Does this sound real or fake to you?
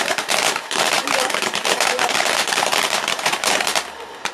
fake